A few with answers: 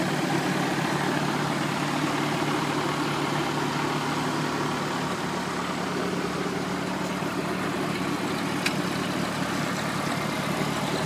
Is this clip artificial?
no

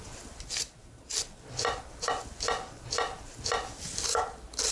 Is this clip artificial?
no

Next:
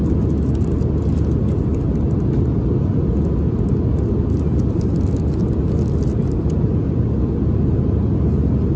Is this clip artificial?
no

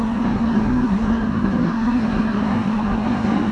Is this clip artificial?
yes